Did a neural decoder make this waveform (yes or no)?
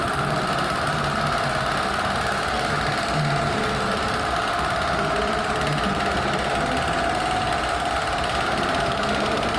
no